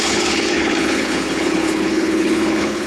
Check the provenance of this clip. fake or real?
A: fake